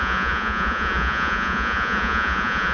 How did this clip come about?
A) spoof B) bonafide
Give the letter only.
A